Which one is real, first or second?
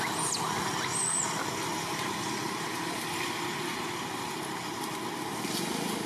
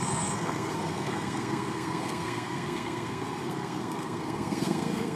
first